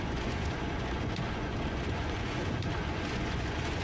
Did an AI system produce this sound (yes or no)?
yes